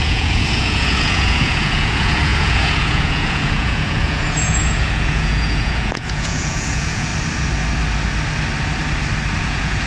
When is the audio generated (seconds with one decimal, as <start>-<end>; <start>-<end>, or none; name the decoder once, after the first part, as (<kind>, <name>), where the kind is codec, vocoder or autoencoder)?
0.0-7.1 (vocoder, Vocos); 9.4-9.9